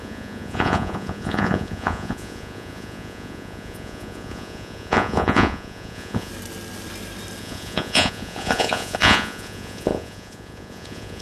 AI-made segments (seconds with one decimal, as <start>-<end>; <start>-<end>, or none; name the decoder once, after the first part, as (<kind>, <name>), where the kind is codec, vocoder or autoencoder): 0.0-6.3 (vocoder, Vocos); 7.4-11.2